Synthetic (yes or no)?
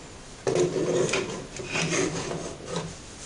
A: no